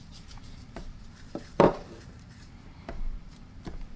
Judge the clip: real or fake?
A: fake